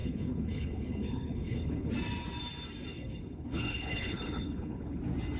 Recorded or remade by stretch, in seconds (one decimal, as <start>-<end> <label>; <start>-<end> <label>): 0.0-1.9 remade; 1.9-2.9 recorded; 2.9-5.0 remade; 5.0-5.4 recorded